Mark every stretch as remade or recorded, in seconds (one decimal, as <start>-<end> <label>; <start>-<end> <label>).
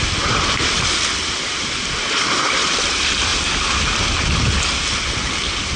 0.0-3.3 remade; 3.3-5.8 recorded